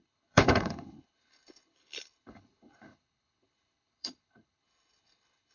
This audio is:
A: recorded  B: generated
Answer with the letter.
B